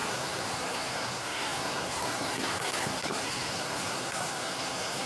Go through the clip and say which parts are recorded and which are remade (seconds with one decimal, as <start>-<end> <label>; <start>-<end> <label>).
0.0-5.1 remade